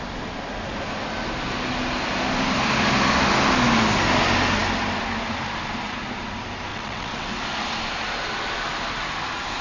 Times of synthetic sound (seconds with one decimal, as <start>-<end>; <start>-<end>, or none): 6.7-7.4